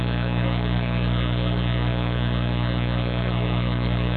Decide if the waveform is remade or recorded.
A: remade